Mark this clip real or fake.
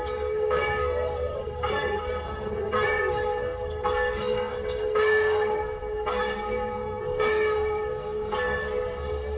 fake